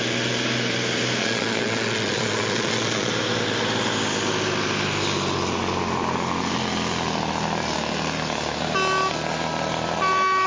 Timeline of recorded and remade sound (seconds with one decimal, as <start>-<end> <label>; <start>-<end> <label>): 0.0-1.2 recorded; 1.2-3.1 remade; 3.1-10.5 recorded